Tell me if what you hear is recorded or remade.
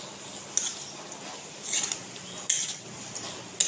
recorded